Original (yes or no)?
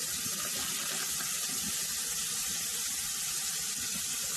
yes